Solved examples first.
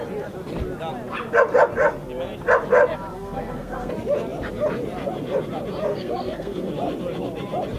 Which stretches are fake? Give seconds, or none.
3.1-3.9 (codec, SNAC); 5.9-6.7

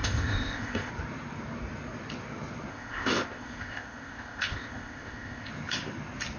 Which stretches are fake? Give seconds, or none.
0.0-0.9 (codec, ZipCodec); 2.7-5.5

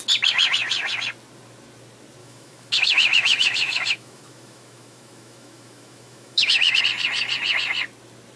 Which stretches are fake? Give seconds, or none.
2.2-6.8 (autoencoder, DAC-VAE)